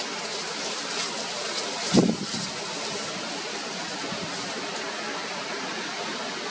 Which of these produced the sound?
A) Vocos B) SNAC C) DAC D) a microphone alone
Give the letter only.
D